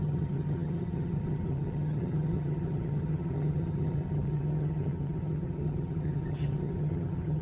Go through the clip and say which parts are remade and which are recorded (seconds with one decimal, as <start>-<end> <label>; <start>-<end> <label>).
0.0-7.4 remade